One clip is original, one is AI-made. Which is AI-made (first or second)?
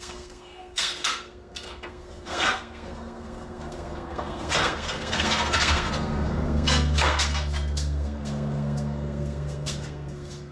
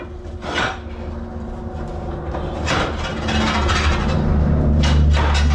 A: first